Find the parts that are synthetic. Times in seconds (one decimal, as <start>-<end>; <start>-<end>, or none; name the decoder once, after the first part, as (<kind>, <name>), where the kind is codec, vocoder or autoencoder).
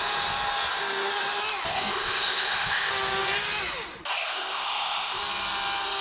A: 1.7-2.9 (codec, ZipCodec); 4.1-5.2